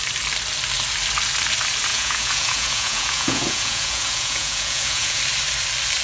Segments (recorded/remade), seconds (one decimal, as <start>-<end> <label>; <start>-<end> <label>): 0.0-1.9 recorded; 1.9-5.2 remade; 5.2-6.0 recorded